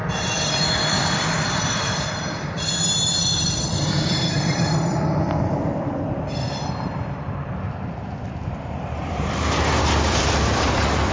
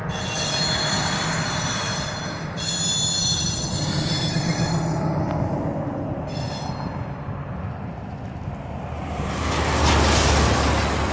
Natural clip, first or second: second